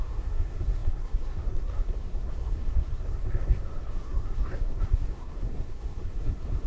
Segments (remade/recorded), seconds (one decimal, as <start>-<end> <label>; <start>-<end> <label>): 0.0-6.7 remade